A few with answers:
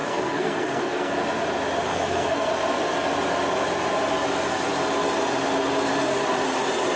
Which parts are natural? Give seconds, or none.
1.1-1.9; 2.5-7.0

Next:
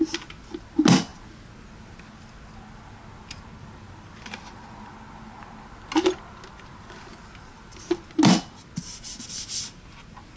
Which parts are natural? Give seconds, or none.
0.0-10.4

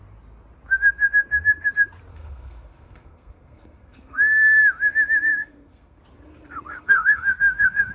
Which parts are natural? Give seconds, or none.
0.0-2.1; 4.6-5.3; 6.0-6.8

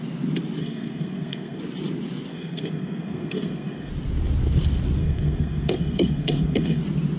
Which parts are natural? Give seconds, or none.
0.0-0.6; 1.6-2.3; 3.9-5.0; 6.8-7.2

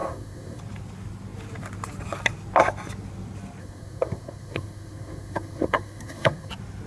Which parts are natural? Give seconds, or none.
0.6-3.6; 6.5-6.9

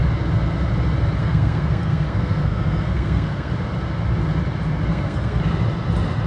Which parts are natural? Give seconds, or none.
0.0-1.2; 3.5-4.9; 5.4-6.3